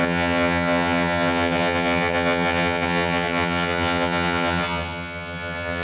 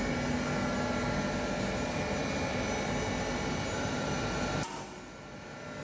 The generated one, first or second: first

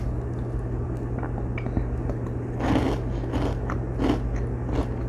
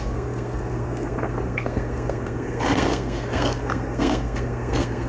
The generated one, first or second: second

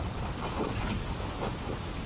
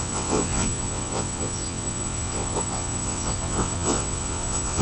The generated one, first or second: second